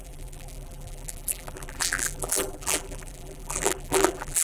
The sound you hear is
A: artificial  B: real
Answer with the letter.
A